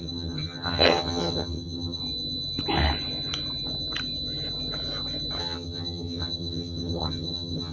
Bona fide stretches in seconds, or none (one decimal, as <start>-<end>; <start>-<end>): 2.0-5.4